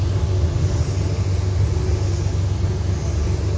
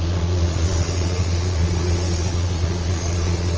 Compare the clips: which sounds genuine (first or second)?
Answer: first